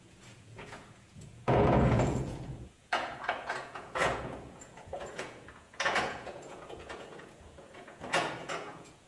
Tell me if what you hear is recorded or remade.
remade